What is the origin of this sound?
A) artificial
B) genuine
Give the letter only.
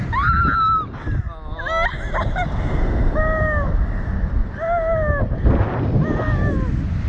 B